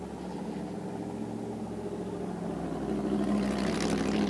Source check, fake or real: real